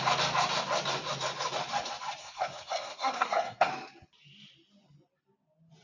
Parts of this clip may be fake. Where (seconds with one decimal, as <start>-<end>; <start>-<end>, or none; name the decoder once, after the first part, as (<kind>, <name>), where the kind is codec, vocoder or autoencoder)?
2.2-3.7 (codec, SNAC)